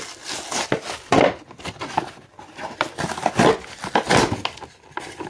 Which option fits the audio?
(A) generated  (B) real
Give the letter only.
B